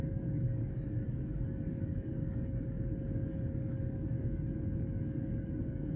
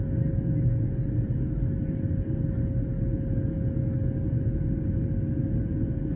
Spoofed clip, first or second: first